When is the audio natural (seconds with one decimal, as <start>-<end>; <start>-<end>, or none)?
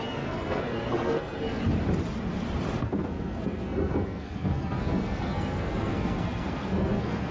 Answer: 1.6-2.8